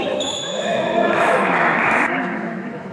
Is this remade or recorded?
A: remade